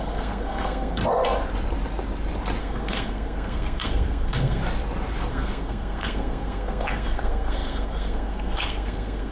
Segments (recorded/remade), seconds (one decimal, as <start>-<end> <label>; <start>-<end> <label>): 0.0-1.0 remade; 1.0-2.6 recorded; 2.6-4.6 remade; 4.6-5.3 recorded; 5.3-9.3 remade